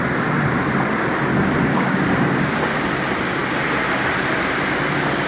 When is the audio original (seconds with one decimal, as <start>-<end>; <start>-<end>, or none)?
0.0-1.7; 2.4-5.3